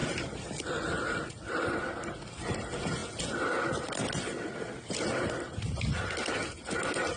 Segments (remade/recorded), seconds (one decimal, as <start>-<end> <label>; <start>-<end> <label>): 0.0-0.7 remade; 0.7-7.2 recorded